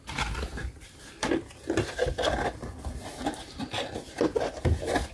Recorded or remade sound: recorded